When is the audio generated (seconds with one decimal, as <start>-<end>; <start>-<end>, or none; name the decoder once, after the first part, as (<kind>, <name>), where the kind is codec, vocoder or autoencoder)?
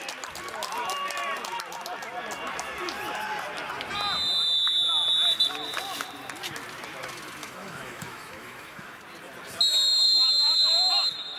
7.4-9.0 (autoencoder, DAC-VAE)